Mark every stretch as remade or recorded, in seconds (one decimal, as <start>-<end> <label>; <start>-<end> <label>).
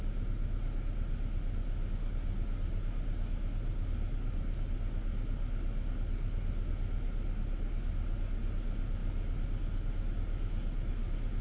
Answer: 0.0-11.4 recorded